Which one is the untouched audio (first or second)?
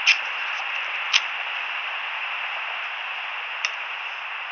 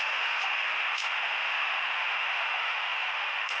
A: first